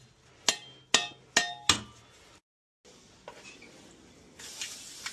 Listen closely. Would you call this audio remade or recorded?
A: recorded